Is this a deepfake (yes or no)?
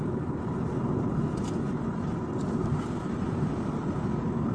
no